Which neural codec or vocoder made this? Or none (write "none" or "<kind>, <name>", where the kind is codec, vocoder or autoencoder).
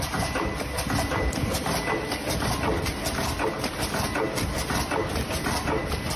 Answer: none